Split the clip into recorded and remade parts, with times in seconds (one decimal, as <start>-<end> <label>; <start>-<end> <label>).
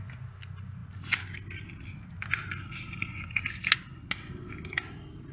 0.0-5.3 recorded